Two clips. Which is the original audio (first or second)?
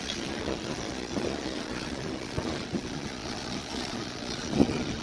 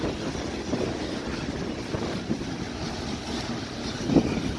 second